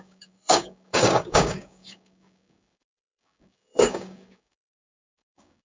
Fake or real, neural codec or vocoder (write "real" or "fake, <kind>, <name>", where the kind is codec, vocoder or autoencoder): fake, codec, DAC